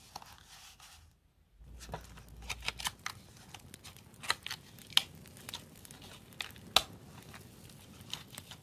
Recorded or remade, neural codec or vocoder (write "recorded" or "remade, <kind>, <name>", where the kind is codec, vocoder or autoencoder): recorded